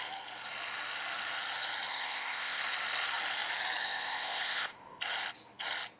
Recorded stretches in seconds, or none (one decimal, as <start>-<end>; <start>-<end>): 0.0-1.9; 2.6-3.8; 5.0-6.0